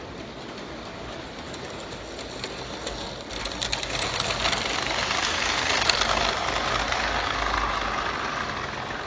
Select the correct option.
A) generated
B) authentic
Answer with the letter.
B